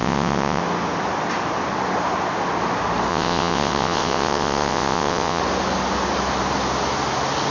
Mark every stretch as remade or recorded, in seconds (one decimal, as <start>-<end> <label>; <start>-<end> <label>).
0.0-0.6 remade; 0.6-3.1 recorded; 3.1-5.4 remade; 5.4-7.5 recorded